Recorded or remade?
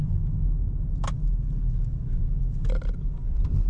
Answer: recorded